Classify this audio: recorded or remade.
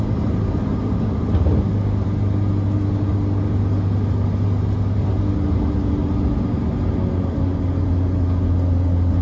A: recorded